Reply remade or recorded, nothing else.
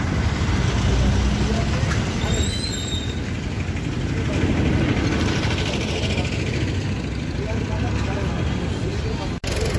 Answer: recorded